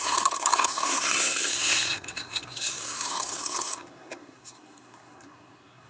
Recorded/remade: remade